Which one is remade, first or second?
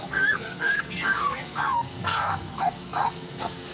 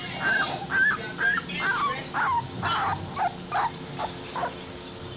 first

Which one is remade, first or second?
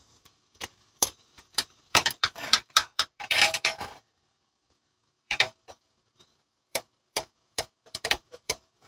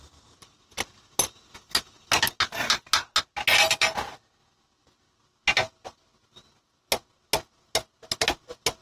first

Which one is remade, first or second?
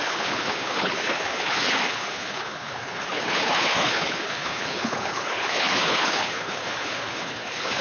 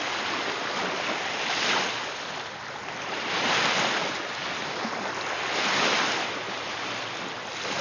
first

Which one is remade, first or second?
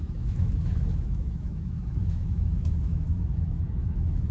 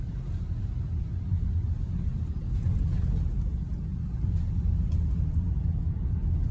first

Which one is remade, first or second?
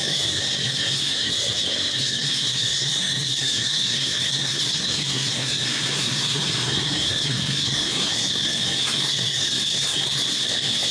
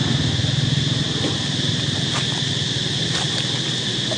first